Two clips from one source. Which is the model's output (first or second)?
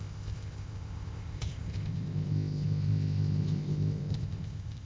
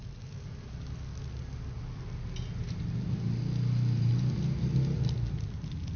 first